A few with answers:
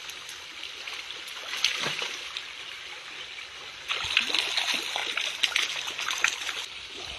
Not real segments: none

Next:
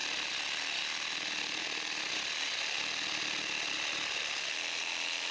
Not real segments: none

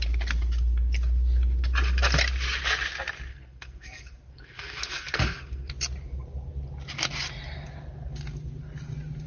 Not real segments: 3.3-5.7 (codec, SNAC)

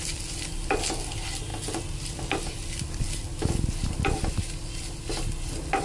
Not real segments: none

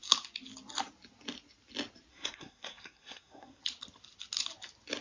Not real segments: 2.1-3.6 (codec, SNAC)

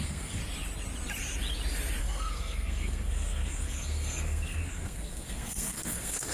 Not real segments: 0.0-0.4 (codec, SNAC); 2.0-6.3

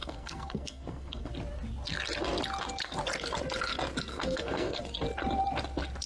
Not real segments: 0.0-1.3 (codec, SNAC); 4.1-4.8